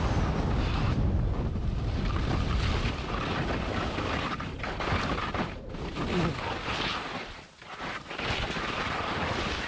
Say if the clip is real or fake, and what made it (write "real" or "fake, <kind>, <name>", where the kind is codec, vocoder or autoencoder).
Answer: real